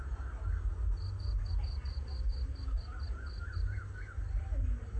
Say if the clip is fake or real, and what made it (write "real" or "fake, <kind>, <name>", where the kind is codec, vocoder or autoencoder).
real